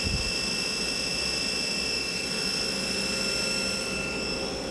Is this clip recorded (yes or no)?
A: yes